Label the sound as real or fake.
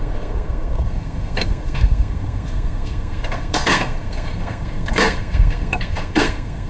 fake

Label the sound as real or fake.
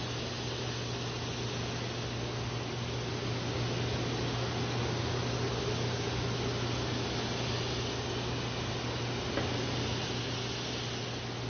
real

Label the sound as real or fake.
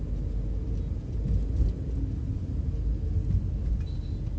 real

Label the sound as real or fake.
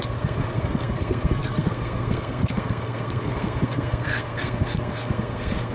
fake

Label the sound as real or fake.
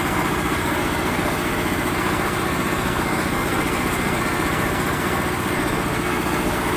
fake